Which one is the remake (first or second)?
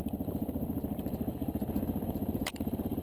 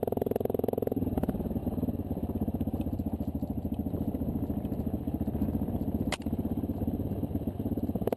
first